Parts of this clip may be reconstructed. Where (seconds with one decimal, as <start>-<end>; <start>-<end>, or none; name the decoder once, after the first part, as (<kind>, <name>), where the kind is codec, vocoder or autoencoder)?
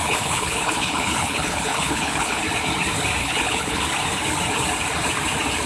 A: 0.0-2.4 (codec, HILCodec); 3.2-3.8